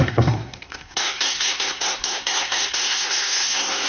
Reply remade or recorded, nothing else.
remade